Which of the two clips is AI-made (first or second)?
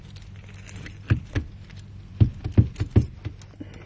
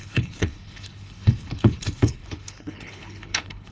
second